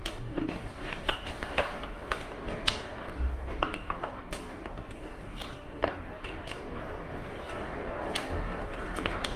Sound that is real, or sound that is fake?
fake